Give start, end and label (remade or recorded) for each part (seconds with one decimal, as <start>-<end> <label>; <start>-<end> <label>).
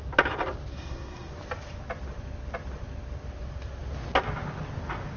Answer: 0.0-0.7 recorded; 0.7-1.3 remade; 1.3-5.2 recorded